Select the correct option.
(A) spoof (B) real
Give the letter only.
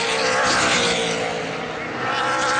B